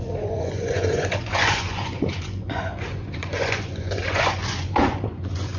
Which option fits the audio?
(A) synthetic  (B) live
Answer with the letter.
A